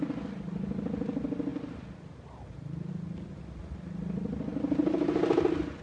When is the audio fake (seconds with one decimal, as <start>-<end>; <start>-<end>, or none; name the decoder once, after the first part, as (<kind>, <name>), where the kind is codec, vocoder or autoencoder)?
none